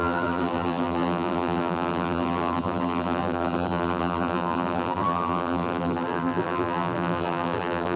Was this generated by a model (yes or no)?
yes